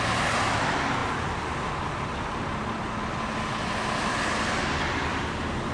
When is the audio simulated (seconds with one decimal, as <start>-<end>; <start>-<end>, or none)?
none